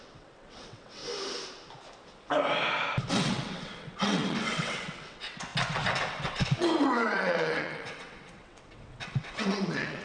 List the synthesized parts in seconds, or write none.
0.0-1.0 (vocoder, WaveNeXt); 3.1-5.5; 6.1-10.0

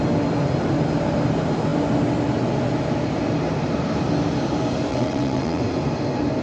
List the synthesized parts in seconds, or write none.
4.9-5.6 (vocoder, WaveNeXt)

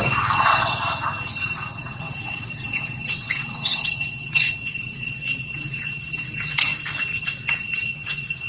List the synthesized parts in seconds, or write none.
0.0-0.8 (vocoder, WaveNeXt); 1.8-6.7; 7.2-8.5